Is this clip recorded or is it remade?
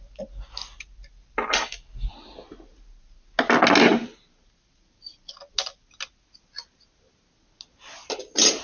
recorded